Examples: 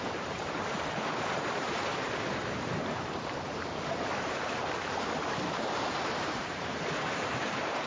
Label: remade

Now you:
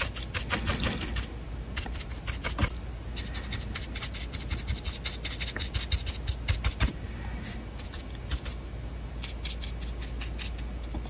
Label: recorded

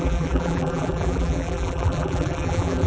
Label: remade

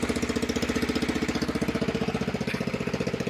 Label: recorded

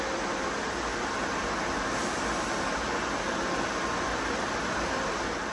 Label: recorded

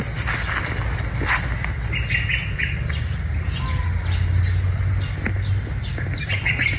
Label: recorded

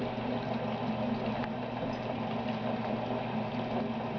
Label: remade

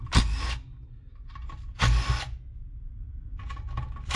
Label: recorded